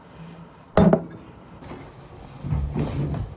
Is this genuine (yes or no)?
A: yes